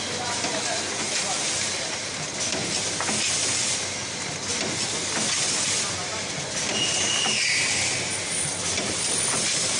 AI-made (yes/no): no